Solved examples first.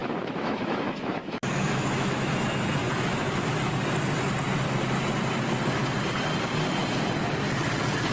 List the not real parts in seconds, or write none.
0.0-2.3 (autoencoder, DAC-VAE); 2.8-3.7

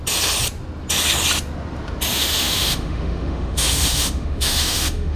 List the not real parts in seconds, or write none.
2.1-5.2 (autoencoder, DAC-VAE)

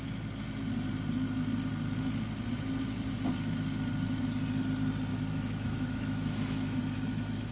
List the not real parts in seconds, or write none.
5.1-7.5 (autoencoder, DAC-VAE)

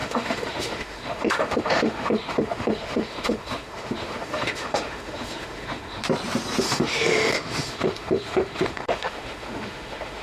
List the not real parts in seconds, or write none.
0.0-6.0 (autoencoder, DAC-VAE); 6.6-10.2

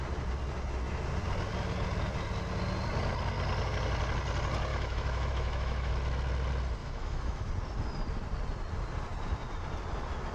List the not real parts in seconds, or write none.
4.7-5.9 (autoencoder, DAC-VAE); 6.8-7.5